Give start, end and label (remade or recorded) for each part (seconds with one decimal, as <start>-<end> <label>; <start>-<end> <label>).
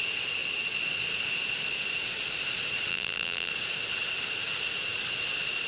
0.0-2.9 recorded; 2.9-3.5 remade; 3.5-5.7 recorded